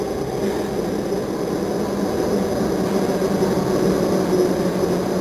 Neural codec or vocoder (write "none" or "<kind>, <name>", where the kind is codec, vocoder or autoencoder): none